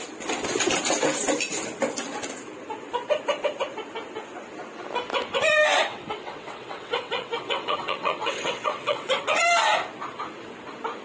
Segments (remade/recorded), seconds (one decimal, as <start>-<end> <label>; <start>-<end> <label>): 0.0-5.9 recorded; 5.9-9.4 remade; 9.4-11.0 recorded